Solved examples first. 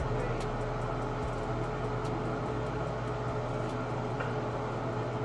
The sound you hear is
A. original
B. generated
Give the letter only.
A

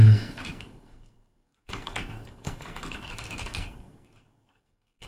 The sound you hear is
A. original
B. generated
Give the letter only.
B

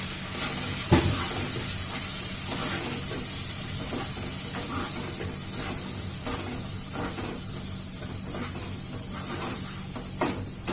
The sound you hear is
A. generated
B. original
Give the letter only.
B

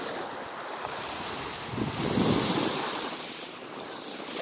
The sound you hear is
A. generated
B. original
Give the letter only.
B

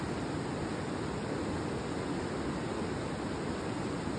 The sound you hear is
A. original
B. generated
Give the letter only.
A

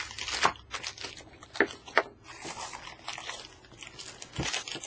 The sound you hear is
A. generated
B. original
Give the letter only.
B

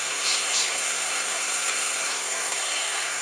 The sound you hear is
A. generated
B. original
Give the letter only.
A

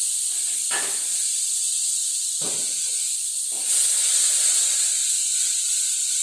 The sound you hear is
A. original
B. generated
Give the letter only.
A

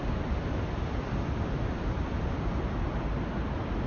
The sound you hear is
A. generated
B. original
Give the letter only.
B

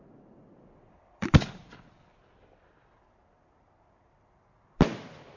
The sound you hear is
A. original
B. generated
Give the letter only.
A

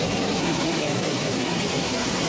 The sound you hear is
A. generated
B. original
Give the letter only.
A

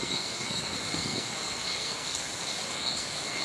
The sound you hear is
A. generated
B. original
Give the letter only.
A